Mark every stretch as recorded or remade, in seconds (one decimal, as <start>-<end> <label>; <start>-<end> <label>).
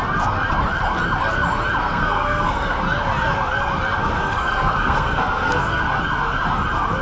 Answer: 0.0-1.8 recorded; 1.8-2.8 remade; 2.8-4.0 recorded; 4.0-5.8 remade; 5.8-7.0 recorded